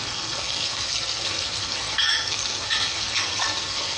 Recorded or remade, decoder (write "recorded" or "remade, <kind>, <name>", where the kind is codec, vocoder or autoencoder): remade, codec, SNAC